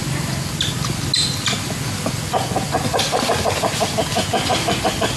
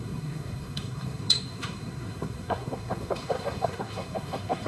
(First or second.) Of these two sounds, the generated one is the second